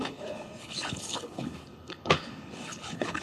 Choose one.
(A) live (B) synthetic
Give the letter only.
B